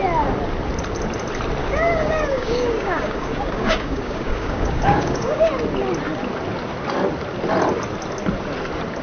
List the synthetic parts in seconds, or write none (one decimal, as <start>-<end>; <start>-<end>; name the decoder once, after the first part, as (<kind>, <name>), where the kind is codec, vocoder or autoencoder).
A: 1.6-5.5 (codec, DAC)